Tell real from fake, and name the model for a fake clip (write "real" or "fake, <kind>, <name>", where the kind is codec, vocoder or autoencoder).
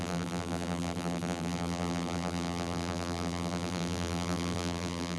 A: fake, vocoder, BigVGAN v2